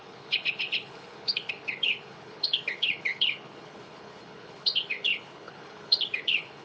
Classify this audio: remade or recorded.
remade